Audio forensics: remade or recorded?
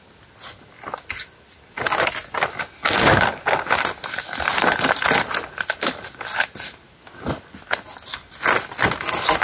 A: recorded